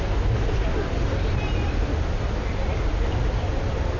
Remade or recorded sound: recorded